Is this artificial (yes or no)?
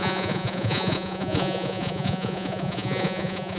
yes